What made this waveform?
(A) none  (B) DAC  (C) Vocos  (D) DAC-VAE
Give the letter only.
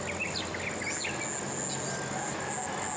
A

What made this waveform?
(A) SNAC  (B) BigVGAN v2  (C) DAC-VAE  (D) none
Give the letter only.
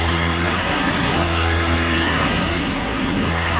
A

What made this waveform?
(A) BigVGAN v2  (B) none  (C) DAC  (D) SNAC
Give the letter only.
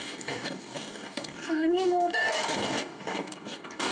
C